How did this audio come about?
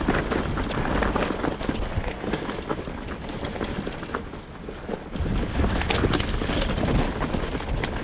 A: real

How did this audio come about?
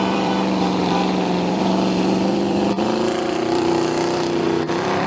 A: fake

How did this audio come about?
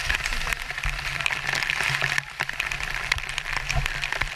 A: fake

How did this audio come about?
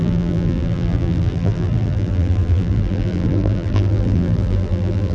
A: fake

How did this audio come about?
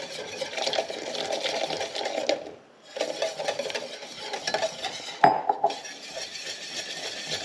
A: real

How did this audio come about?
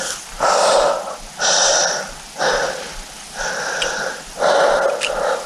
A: real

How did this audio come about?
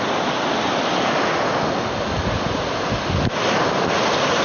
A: real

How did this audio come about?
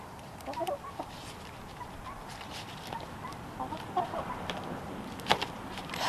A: fake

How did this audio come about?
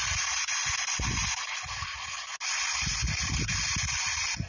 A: real